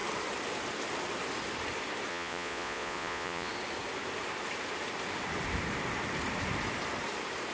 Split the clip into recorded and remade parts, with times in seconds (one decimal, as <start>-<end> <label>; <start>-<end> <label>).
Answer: 0.0-2.1 recorded; 2.1-3.5 remade; 3.5-7.5 recorded